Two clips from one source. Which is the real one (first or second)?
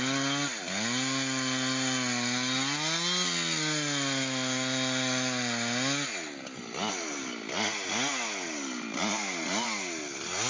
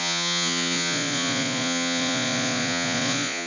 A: first